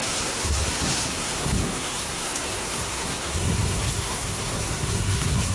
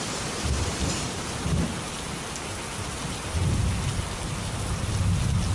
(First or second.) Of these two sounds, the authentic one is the second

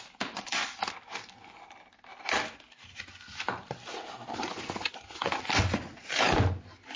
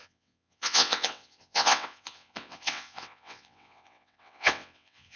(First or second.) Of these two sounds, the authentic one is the first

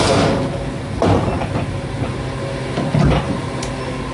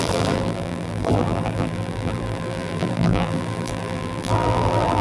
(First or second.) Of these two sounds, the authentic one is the first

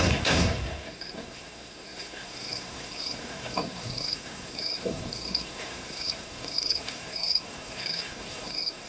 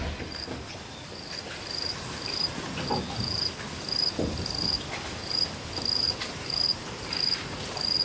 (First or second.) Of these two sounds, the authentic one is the second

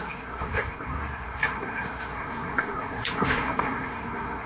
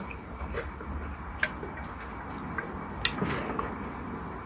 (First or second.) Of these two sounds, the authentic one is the second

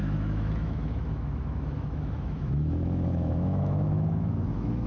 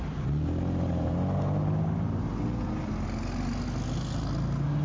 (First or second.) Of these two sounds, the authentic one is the second